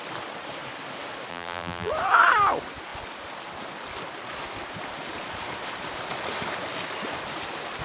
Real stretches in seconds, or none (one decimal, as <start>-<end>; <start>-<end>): 0.0-1.3; 1.9-7.8